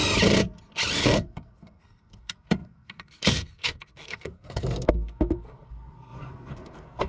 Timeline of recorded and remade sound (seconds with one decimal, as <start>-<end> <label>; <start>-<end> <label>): 0.0-1.0 recorded; 1.0-7.1 remade